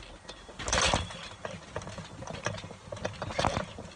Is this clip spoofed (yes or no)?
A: no